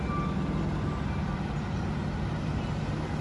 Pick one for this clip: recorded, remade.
recorded